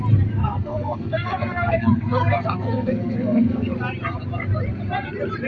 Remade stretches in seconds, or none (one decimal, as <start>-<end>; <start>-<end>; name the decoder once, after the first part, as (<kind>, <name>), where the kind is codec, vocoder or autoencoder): 0.4-3.7 (codec, SNAC)